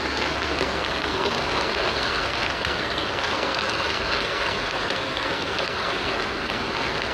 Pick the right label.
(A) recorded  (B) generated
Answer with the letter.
B